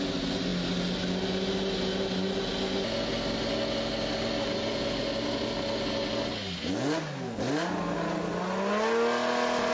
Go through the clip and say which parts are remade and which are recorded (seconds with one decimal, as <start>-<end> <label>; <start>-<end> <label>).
0.0-9.7 recorded